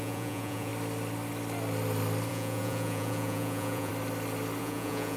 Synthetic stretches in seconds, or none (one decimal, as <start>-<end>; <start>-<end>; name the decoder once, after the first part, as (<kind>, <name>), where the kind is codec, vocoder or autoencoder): 0.0-0.7 (vocoder, Vocos); 2.3-3.9; 4.6-5.2